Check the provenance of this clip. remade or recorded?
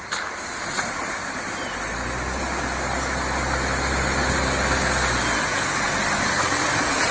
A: recorded